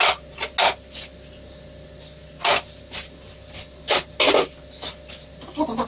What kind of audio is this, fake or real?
real